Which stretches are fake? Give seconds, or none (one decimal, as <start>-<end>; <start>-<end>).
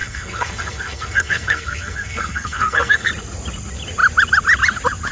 0.0-3.1